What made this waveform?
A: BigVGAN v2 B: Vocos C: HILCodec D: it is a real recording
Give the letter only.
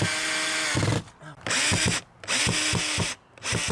D